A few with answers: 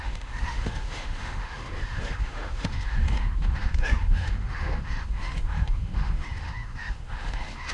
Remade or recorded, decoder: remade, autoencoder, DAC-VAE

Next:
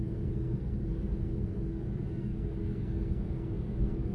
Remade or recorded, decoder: remade, codec, SNAC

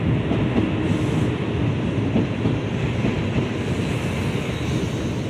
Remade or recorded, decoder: recorded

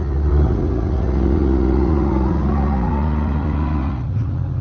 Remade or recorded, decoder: remade, vocoder, Vocos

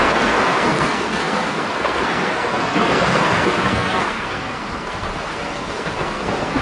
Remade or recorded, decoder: remade, codec, SNAC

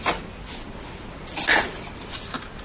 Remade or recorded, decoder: recorded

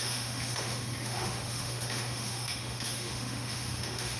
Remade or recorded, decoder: remade, autoencoder, DAC-VAE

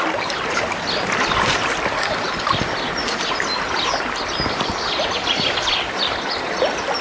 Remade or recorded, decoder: recorded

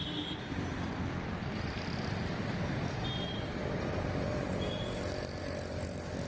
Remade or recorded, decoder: recorded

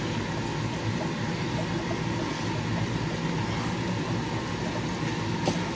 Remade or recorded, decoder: recorded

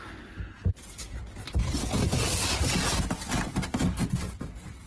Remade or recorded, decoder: recorded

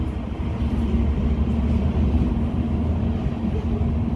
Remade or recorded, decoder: recorded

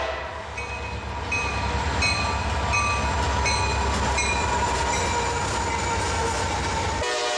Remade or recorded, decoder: recorded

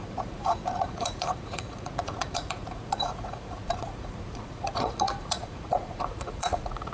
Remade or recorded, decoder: remade, vocoder, Vocos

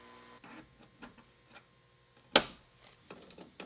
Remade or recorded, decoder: recorded